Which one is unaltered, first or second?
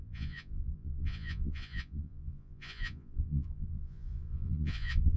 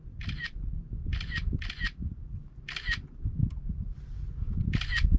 second